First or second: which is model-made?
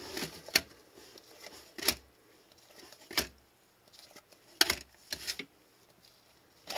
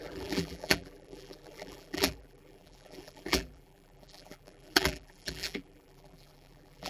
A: second